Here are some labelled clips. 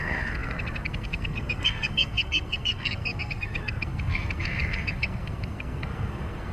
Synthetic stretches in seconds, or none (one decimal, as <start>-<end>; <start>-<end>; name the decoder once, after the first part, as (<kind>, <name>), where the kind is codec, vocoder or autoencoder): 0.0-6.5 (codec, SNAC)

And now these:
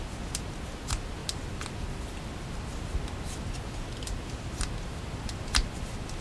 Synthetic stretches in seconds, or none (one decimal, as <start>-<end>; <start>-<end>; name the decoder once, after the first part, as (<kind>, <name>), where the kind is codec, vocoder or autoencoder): none

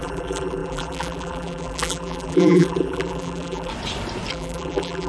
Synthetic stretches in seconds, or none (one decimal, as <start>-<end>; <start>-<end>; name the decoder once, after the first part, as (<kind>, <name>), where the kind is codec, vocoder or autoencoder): 0.0-3.7 (vocoder, BigVGAN v2); 4.3-5.1

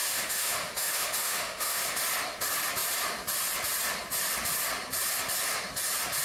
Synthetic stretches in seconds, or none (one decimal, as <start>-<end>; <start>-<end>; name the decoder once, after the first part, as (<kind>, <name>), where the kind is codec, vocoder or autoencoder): 0.0-2.0 (autoencoder, DAC-VAE)